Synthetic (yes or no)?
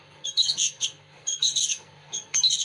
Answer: yes